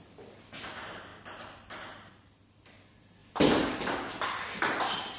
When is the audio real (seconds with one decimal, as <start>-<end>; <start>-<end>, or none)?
0.0-5.2